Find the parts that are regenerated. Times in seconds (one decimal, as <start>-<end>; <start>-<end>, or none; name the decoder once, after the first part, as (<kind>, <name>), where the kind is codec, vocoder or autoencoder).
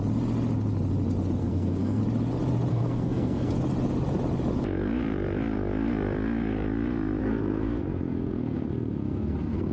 1.4-2.0 (codec, SNAC); 2.7-3.5; 7.2-9.7